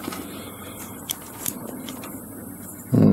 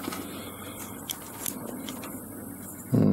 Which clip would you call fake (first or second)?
first